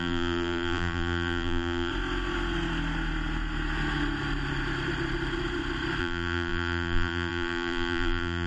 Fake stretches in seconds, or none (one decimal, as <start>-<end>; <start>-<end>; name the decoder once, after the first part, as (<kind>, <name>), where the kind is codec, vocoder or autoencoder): 0.0-1.9 (vocoder, BigVGAN v2); 6.0-8.5